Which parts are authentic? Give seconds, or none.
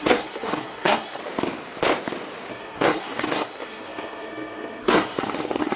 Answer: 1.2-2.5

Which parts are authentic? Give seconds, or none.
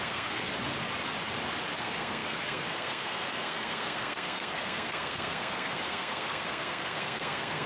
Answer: 0.5-1.8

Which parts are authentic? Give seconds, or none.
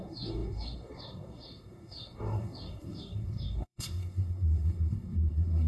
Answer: none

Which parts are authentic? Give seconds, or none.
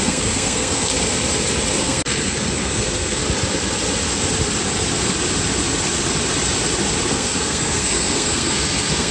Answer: 0.9-1.8; 3.2-7.1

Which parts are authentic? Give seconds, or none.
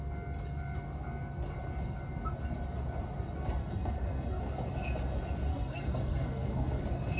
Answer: 0.0-3.6; 4.4-5.5; 6.8-7.2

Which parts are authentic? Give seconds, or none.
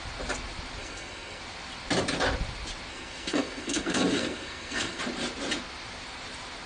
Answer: 0.0-0.8; 1.4-2.9; 5.0-6.7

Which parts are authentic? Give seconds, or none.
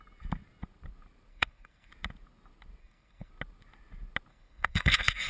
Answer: 0.0-1.3; 1.9-2.8; 3.3-4.3